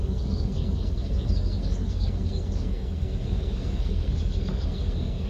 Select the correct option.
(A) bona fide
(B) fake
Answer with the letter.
B